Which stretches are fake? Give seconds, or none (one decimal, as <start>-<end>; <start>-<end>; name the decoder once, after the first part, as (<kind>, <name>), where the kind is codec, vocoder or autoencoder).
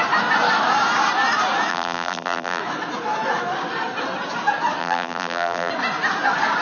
1.7-2.6 (vocoder, BigVGAN v2); 4.8-5.7